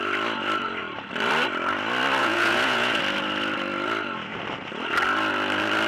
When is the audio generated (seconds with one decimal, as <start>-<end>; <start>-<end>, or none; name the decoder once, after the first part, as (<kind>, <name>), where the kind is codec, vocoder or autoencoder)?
2.2-3.0 (vocoder, Vocos)